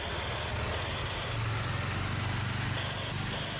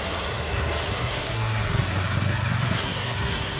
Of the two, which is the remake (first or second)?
second